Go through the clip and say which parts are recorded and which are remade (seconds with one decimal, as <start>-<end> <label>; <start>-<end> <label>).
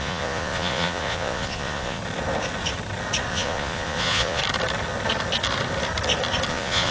0.0-2.0 remade; 2.0-3.3 recorded; 3.3-4.4 remade; 4.4-6.5 recorded; 6.5-6.9 remade